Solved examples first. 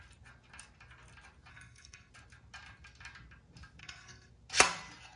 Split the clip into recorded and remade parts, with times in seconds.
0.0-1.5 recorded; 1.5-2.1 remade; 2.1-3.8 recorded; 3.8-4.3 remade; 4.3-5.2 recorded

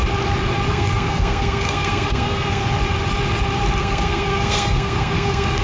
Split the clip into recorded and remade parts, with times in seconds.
0.0-0.7 recorded; 0.7-2.6 remade; 2.6-3.8 recorded; 3.8-5.6 remade

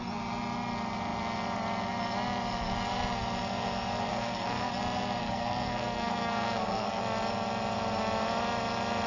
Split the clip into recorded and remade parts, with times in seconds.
0.0-4.1 recorded; 4.1-4.7 remade; 4.7-5.2 recorded; 5.2-7.0 remade; 7.0-9.1 recorded

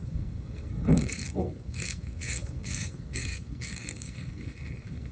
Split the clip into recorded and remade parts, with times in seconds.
0.0-5.1 remade